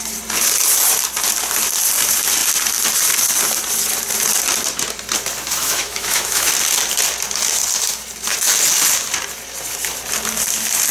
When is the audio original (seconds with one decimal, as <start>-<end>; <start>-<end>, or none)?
0.0-5.6; 6.5-10.9

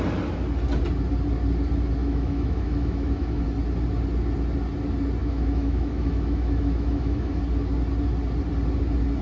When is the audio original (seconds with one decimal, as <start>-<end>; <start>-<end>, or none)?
0.0-2.0; 3.4-5.2; 7.4-9.2